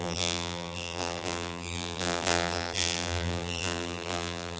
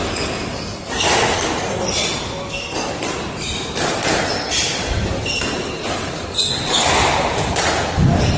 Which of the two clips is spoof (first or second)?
first